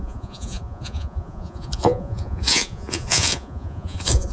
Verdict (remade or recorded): remade